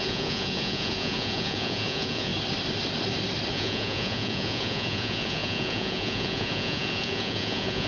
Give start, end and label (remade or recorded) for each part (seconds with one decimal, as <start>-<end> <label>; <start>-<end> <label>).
0.0-2.3 remade; 2.3-3.5 recorded; 3.5-7.9 remade